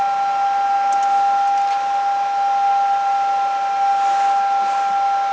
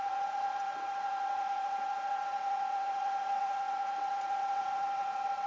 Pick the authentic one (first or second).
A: first